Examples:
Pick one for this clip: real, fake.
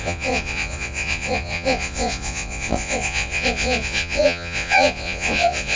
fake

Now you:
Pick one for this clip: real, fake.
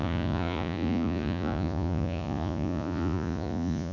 fake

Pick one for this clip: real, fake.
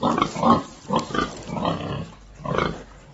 real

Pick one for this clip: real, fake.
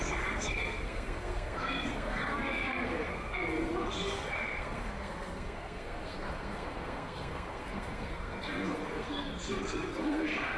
fake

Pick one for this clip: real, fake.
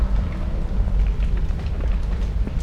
real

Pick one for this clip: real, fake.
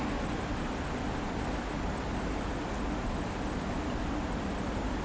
real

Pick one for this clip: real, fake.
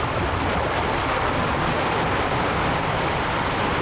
real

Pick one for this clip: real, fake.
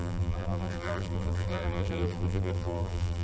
fake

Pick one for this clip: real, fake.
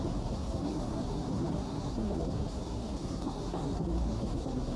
fake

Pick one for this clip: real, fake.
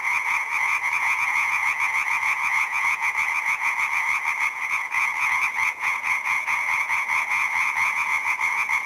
fake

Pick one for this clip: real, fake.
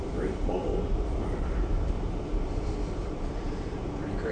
fake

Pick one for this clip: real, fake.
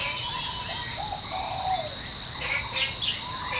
real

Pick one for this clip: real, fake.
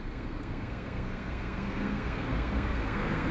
fake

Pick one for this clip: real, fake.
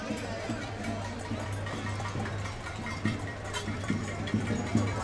fake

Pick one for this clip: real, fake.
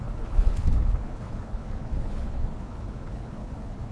fake